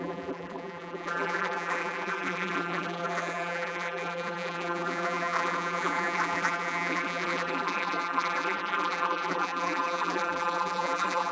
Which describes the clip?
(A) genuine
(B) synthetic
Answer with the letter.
B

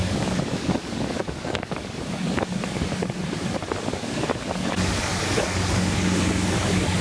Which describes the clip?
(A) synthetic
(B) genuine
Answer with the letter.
A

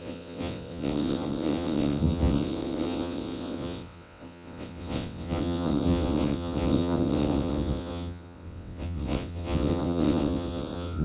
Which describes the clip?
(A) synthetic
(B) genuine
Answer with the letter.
A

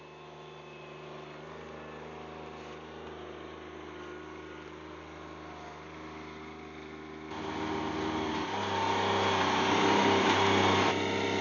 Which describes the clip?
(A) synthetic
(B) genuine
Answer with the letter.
B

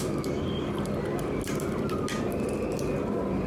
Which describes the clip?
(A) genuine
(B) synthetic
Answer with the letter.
A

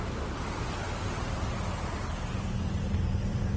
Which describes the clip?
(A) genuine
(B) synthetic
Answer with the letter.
A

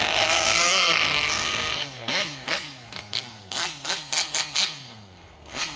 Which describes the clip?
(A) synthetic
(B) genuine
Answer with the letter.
A